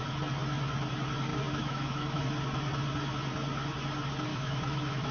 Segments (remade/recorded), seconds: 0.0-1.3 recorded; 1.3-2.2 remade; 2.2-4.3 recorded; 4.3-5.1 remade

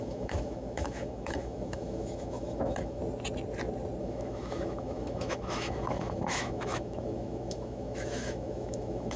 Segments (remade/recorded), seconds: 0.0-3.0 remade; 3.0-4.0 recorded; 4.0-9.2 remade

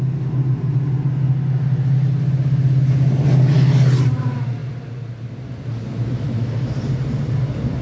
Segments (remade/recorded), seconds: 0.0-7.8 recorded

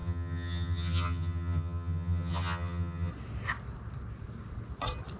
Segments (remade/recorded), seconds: 0.0-3.1 remade; 3.1-5.2 recorded